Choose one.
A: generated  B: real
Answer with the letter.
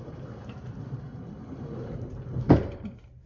A